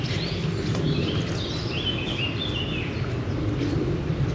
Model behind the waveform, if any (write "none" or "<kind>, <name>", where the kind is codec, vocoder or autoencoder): none